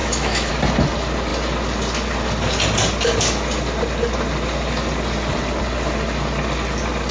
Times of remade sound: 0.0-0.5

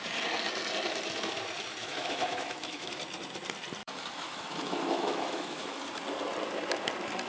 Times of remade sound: 1.8-3.0; 3.8-5.8

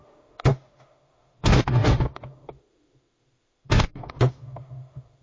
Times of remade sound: 0.0-5.2

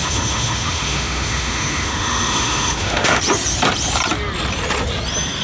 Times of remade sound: 0.0-3.2

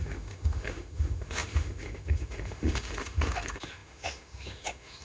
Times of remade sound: 0.0-5.0

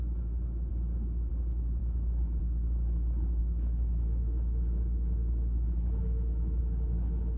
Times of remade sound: 3.4-6.6

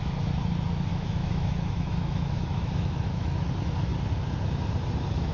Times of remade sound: 0.9-3.5

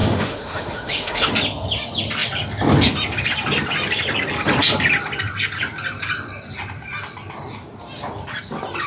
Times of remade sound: 0.0-1.3